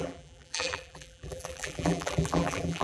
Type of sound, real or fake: fake